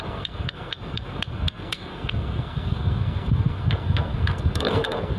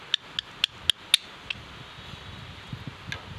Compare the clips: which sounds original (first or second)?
second